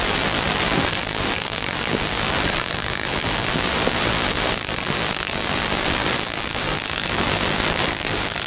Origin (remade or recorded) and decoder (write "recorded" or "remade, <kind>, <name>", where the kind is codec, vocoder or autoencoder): remade, vocoder, BigVGAN v2